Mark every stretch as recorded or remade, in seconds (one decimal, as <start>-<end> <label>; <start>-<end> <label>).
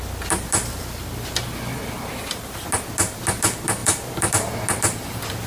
0.0-1.7 recorded; 1.7-2.5 remade; 2.5-3.8 recorded; 3.8-4.3 remade; 4.3-5.5 recorded